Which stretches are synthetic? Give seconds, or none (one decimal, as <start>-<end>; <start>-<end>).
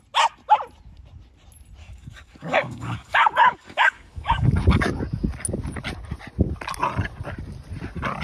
1.8-5.0